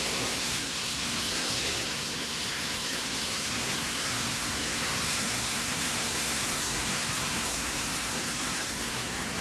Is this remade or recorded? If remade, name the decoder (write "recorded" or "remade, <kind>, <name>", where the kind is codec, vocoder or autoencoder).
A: remade, codec, SNAC